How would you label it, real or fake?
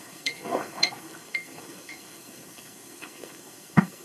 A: fake